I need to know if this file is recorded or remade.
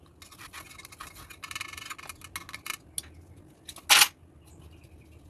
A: recorded